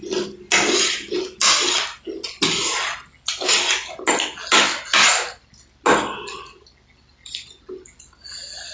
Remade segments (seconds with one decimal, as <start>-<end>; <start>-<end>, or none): none